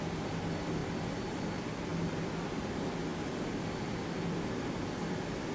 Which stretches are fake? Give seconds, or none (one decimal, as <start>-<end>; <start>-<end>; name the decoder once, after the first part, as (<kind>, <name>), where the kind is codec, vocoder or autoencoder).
0.8-1.4 (vocoder, BigVGAN v2); 3.1-5.1